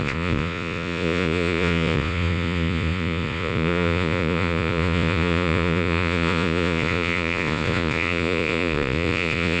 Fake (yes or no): yes